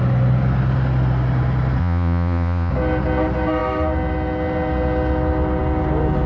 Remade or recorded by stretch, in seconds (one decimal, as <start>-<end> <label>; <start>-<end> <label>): 0.0-1.8 recorded; 1.8-2.7 remade; 2.7-6.3 recorded